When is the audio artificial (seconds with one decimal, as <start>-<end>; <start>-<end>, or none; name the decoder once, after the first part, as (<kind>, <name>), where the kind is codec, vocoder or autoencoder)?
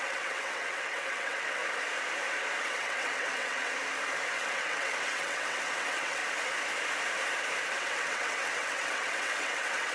0.0-1.6 (vocoder, WaveNeXt); 2.6-3.8; 4.3-6.2; 7.7-9.9